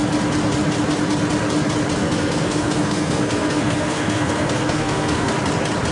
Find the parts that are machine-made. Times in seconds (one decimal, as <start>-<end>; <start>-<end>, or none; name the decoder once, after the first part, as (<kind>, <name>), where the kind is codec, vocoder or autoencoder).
2.0-5.3 (codec, SNAC)